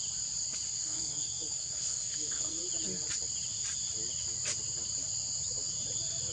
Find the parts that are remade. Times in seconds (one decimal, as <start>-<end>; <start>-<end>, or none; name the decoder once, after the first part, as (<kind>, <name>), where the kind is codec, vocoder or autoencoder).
0.8-2.6 (codec, SNAC)

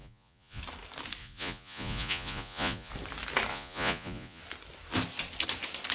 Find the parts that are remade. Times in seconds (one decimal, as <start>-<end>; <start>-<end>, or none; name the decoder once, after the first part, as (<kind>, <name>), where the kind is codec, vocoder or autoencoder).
0.0-0.6 (vocoder, Vocos); 1.2-2.9; 3.5-4.4

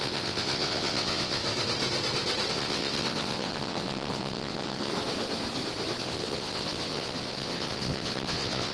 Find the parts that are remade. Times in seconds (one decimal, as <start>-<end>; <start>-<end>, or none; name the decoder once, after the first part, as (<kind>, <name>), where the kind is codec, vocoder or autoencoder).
0.0-1.4 (vocoder, WaveNeXt); 2.5-4.9; 6.0-8.7

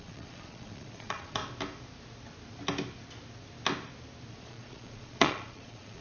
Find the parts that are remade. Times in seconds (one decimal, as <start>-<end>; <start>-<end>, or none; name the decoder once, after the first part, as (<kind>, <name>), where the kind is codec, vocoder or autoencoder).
0.0-1.4 (vocoder, Vocos); 4.3-6.0

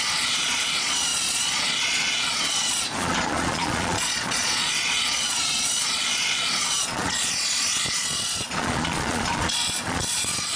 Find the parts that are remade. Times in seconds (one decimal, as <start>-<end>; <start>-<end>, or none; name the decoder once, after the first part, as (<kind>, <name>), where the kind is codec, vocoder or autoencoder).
0.0-10.6 (vocoder, Vocos)

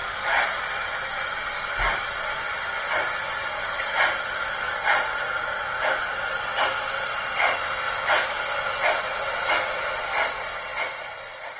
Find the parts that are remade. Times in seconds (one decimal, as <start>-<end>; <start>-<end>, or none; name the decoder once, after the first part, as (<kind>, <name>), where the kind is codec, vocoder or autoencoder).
none